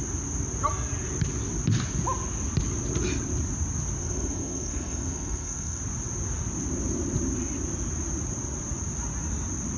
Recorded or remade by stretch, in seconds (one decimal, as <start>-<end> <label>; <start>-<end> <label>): 0.0-4.0 recorded; 4.0-5.8 remade; 5.8-9.8 recorded